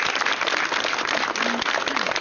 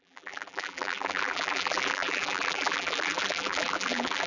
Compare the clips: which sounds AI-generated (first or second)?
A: second